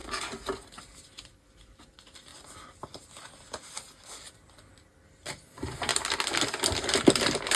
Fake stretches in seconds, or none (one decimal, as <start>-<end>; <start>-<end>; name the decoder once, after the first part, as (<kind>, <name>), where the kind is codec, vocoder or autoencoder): none